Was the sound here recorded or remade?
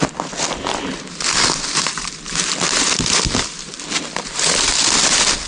recorded